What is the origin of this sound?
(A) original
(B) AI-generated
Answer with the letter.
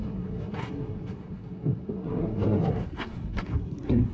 B